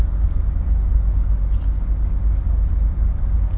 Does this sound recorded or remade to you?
recorded